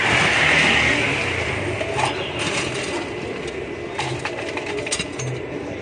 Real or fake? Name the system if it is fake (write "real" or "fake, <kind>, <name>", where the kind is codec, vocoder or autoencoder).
real